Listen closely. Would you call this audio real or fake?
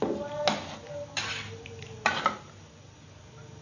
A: real